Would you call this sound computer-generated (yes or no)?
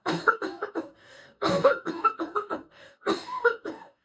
yes